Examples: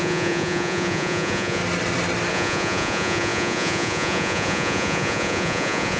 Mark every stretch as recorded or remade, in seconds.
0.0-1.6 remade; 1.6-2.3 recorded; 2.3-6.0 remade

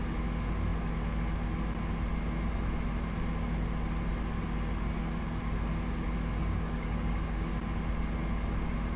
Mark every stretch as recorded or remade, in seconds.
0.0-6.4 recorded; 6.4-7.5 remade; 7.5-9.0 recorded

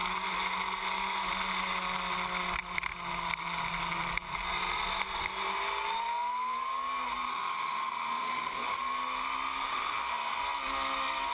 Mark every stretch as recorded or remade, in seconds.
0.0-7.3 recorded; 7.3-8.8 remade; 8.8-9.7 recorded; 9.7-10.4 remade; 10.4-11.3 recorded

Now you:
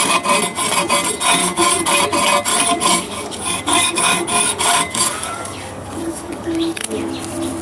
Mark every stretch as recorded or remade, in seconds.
0.0-1.4 recorded; 1.4-2.0 remade; 2.0-2.5 recorded; 2.5-7.0 remade; 7.0-7.6 recorded

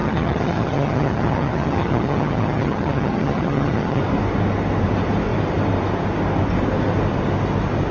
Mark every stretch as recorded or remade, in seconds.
0.0-4.0 remade; 4.0-7.9 recorded